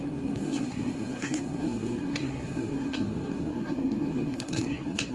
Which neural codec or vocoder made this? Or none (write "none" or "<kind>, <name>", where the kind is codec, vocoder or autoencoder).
codec, SNAC